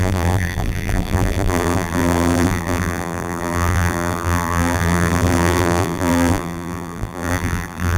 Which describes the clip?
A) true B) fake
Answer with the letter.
B